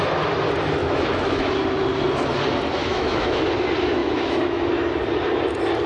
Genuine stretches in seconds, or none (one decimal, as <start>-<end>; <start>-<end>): 0.0-0.8; 1.5-2.8; 3.4-4.0; 4.6-5.9